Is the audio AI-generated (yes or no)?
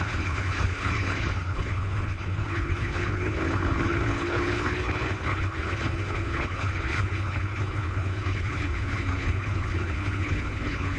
yes